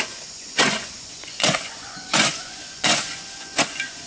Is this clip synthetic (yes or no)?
yes